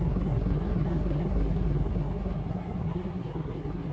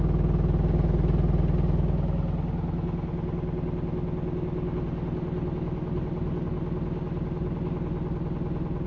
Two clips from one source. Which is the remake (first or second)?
first